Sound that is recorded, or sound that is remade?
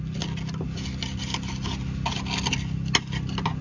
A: recorded